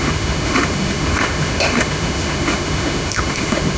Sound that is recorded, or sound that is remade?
remade